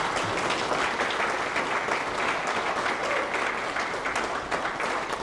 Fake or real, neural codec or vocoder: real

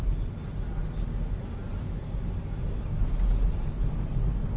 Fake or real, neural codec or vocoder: real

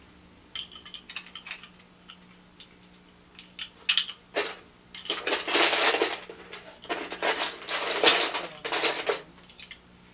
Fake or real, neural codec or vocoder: real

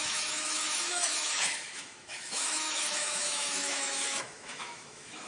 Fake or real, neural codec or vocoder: fake, autoencoder, DAC-VAE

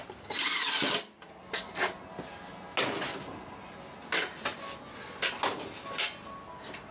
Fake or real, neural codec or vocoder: real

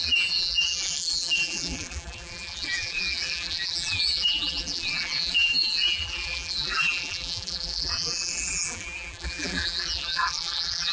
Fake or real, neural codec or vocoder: fake, vocoder, BigVGAN v2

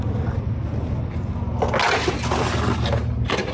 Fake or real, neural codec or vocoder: real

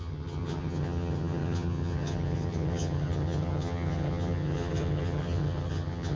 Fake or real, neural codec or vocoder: fake, vocoder, HiFi-GAN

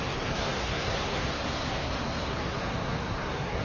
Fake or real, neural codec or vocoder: fake, codec, SNAC